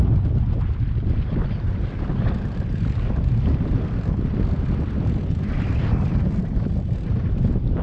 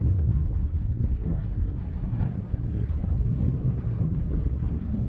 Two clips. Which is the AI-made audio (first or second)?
second